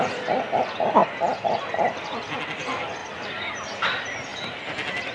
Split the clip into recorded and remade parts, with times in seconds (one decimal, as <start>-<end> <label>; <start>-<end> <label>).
0.0-5.1 recorded